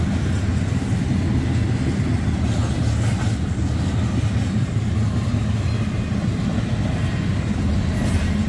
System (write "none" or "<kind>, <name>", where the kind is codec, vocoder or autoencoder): none